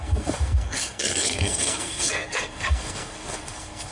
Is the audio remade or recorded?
remade